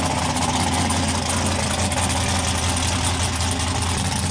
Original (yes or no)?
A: yes